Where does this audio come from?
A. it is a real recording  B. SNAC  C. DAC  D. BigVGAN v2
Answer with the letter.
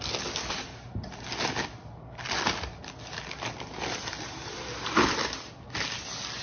A